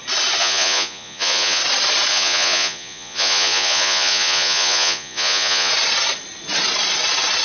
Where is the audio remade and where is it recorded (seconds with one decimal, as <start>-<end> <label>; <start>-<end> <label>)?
0.0-0.4 recorded; 0.4-1.6 remade; 1.6-2.1 recorded; 2.1-5.7 remade; 5.7-7.4 recorded